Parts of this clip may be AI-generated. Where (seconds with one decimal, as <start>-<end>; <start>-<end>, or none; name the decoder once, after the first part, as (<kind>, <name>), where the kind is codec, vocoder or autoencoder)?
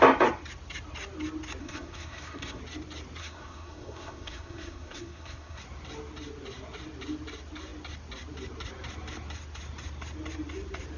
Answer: 1.6-2.6 (codec, SNAC); 3.2-5.6